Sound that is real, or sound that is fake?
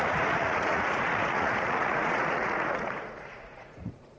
fake